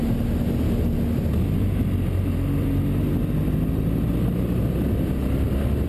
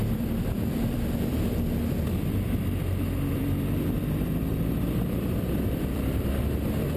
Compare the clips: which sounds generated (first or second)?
second